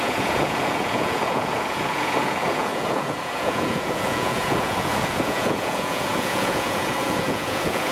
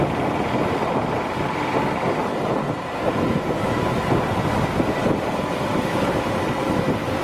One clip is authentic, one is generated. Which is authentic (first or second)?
second